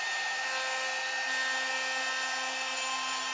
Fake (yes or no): no